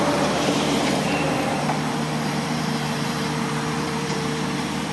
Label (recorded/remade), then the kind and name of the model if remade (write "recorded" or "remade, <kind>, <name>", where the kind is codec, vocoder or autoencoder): remade, vocoder, BigVGAN v2